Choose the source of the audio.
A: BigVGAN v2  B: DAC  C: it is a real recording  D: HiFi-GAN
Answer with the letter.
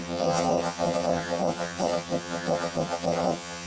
D